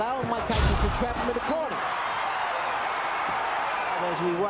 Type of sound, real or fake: real